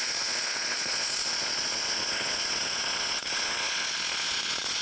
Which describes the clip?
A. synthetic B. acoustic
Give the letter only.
A